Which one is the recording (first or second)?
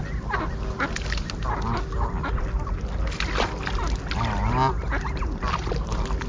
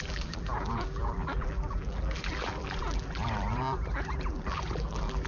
first